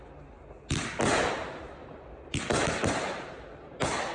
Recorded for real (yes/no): yes